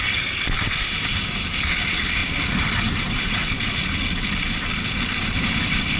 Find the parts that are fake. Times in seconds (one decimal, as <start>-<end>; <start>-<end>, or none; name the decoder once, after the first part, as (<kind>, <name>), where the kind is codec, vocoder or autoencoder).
0.0-2.2 (vocoder, BigVGAN v2); 2.9-3.4; 4.1-6.0